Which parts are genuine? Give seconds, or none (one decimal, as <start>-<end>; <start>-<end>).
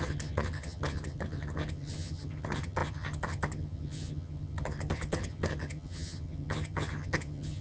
none